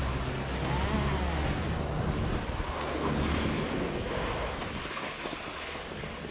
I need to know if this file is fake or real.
real